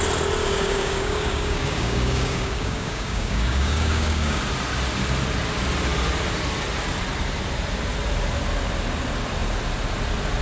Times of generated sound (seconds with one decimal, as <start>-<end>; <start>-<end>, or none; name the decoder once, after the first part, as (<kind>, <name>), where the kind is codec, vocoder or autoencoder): 0.4-4.4 (codec, DAC)